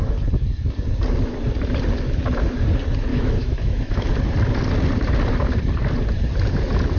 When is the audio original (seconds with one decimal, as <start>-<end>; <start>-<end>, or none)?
0.0-3.1; 4.1-7.0